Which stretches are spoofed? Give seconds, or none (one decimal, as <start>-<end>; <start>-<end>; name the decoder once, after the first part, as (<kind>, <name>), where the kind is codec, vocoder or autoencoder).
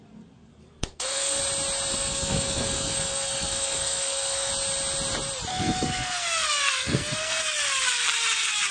0.5-1.4 (codec, SNAC); 1.9-4.5; 5.5-7.4